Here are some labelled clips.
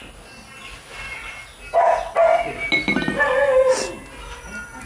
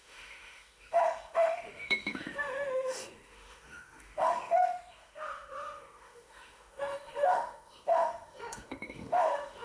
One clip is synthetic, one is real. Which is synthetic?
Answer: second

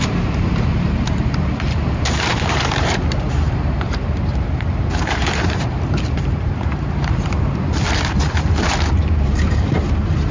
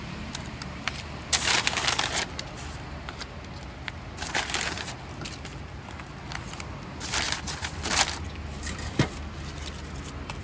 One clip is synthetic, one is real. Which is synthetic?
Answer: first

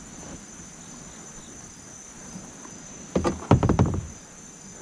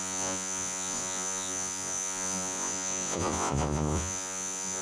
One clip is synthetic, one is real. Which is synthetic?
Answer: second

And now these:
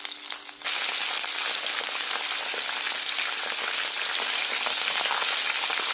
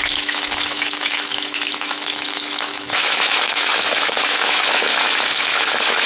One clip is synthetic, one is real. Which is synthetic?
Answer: second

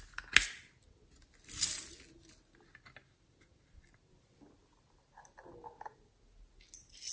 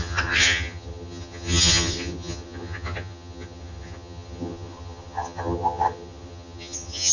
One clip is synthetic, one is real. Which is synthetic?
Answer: second